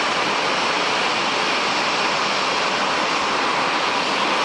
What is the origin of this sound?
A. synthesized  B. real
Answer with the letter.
B